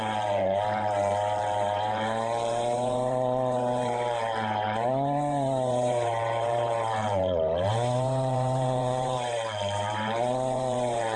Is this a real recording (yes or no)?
no